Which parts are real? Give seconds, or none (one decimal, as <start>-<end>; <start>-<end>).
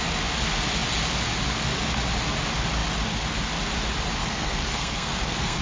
0.0-4.2